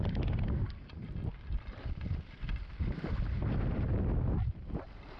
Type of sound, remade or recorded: remade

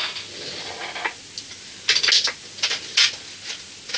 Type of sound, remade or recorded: recorded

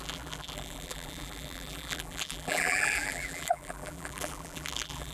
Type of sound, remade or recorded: remade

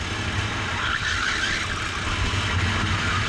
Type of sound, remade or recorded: recorded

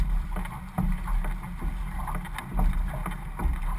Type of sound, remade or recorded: recorded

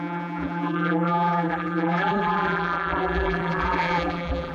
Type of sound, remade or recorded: remade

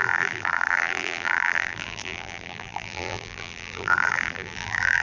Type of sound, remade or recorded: remade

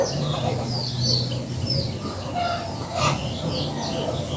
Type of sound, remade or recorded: recorded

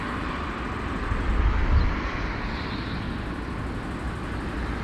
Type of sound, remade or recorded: recorded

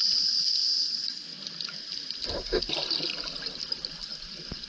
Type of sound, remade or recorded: recorded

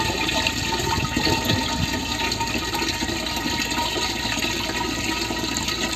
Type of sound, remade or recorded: recorded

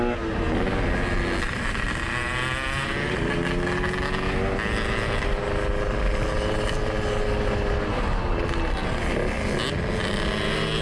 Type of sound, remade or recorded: recorded